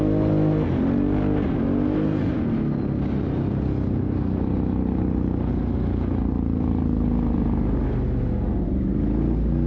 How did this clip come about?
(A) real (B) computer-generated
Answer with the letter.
A